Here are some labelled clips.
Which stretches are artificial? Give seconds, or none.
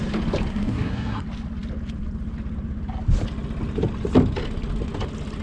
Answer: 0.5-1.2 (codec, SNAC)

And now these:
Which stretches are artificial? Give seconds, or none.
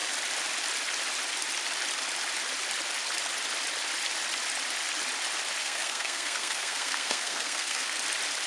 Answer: 5.6-8.0 (codec, SNAC)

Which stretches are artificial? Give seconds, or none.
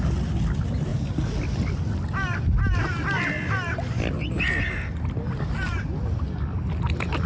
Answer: none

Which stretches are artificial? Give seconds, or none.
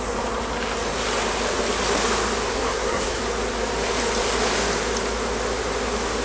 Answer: 2.5-3.2 (codec, SNAC)